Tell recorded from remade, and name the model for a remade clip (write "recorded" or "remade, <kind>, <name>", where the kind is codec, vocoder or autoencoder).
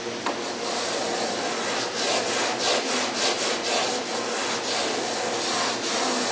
recorded